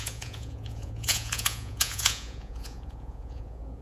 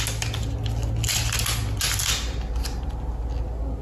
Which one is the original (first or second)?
second